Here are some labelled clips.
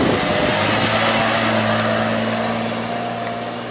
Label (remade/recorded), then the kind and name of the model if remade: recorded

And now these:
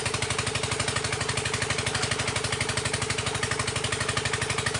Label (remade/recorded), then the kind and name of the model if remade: recorded